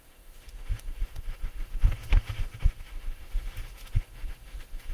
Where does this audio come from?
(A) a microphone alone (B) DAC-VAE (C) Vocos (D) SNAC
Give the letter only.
B